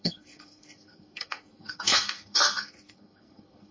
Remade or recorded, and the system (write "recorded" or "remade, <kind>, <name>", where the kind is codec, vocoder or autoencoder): remade, codec, SNAC